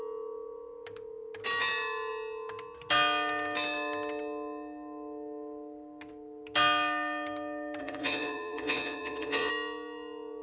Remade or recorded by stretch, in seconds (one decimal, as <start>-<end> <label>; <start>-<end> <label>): 0.0-7.8 recorded; 7.8-9.5 remade; 9.5-10.4 recorded

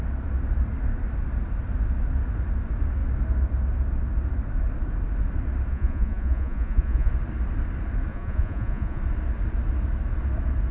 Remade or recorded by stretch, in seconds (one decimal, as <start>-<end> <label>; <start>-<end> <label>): 0.0-5.7 recorded; 5.7-7.1 remade; 7.1-8.1 recorded; 8.1-9.0 remade; 9.0-10.7 recorded

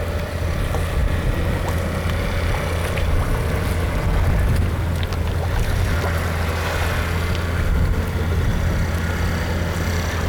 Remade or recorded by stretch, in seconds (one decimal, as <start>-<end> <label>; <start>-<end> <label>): 0.0-10.3 recorded

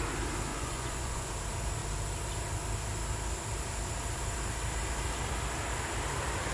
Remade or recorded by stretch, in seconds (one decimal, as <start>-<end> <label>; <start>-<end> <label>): 0.0-0.5 recorded; 0.5-1.3 remade; 1.3-6.5 recorded

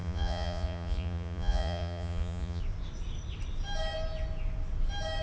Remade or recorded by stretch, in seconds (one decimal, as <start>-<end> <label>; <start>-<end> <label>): 0.0-2.6 remade; 2.6-5.2 recorded

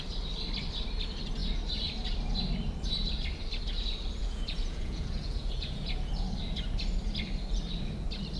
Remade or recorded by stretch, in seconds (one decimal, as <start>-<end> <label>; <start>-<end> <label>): 0.0-4.2 recorded; 4.2-6.1 remade; 6.1-8.4 recorded